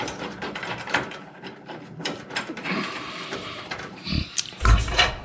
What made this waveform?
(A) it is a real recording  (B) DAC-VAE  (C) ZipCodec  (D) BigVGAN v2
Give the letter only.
D